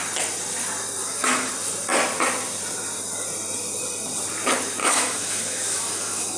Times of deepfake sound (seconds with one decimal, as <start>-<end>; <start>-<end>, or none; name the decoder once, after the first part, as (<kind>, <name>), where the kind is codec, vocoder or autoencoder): 1.0-1.5 (autoencoder, DAC-VAE); 4.8-6.4